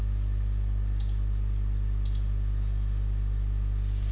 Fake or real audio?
real